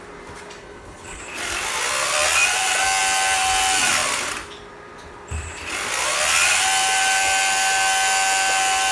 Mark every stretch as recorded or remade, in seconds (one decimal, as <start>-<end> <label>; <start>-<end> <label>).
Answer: 0.0-0.6 recorded; 0.6-1.2 remade; 1.2-8.9 recorded